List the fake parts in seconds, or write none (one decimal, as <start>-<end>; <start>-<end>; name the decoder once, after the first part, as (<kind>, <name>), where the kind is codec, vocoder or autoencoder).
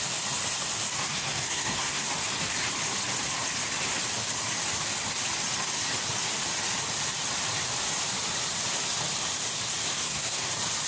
0.9-2.1 (codec, SNAC); 9.9-10.5